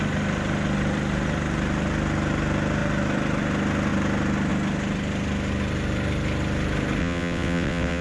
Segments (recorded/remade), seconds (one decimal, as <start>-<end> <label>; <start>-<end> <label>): 0.0-7.0 recorded; 7.0-8.0 remade